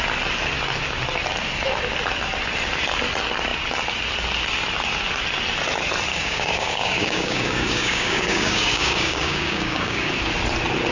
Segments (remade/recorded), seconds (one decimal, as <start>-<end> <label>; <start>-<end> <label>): 0.0-6.1 recorded; 6.1-10.1 remade; 10.1-10.9 recorded